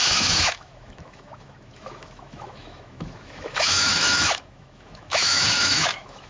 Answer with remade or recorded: remade